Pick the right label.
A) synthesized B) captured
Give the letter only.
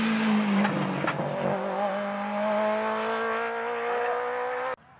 B